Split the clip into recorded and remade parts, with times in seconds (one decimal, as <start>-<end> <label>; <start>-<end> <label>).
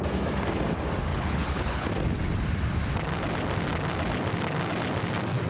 0.0-1.1 recorded; 1.1-1.9 remade; 1.9-5.5 recorded